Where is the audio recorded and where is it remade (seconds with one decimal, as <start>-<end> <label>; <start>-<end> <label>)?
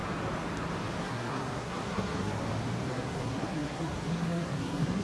0.0-1.0 recorded; 1.0-2.4 remade; 2.4-2.9 recorded; 2.9-5.0 remade